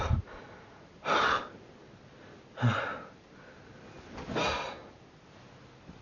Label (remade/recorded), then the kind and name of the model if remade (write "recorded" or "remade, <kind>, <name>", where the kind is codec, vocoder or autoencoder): recorded